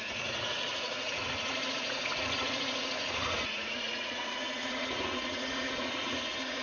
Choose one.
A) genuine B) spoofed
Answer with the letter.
B